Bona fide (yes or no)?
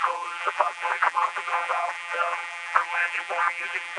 no